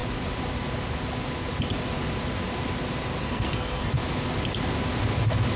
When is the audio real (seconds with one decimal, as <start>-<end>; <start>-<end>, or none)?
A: 0.0-3.2; 3.9-5.6